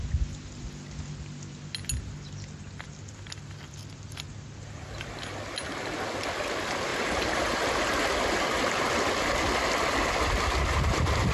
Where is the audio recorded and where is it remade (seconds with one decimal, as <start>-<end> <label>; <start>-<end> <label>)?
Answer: 0.0-6.9 recorded; 6.9-8.2 remade; 8.2-11.3 recorded